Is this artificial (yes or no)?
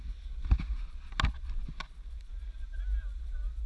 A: no